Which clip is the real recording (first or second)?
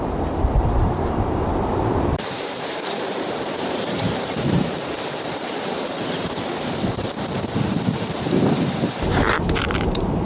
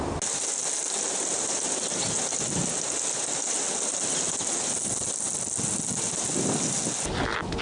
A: second